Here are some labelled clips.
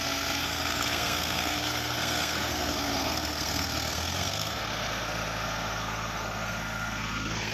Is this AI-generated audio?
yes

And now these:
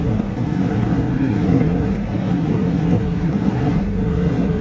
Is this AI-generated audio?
yes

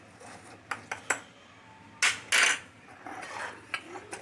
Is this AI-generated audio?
no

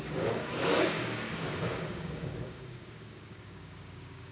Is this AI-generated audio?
yes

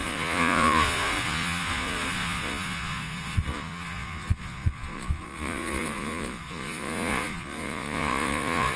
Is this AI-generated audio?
yes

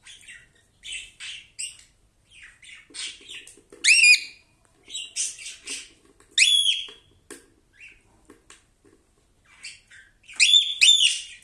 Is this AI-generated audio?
no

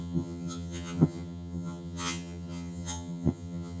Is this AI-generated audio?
yes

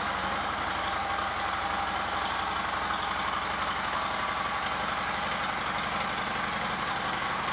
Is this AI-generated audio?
no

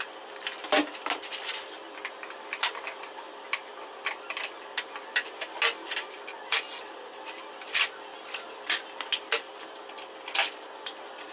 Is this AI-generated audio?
no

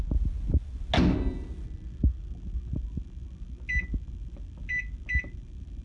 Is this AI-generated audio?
no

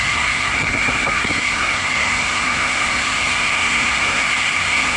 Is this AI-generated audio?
yes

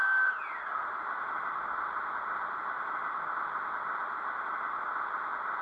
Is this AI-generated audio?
no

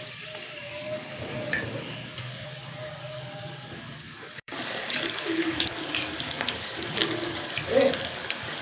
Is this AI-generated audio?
yes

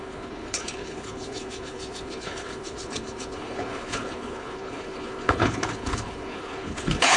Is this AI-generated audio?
yes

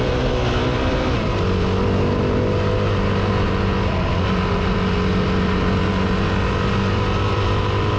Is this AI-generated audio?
no